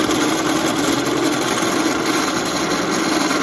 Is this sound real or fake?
real